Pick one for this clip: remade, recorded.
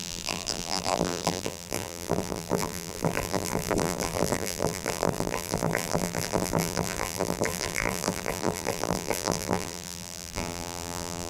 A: remade